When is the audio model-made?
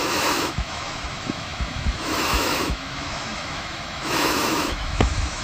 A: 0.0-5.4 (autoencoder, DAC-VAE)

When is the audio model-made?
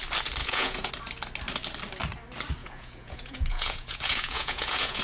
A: 0.4-0.9 (vocoder, Vocos); 2.6-5.0